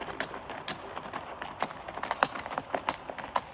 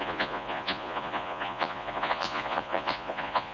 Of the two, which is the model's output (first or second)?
second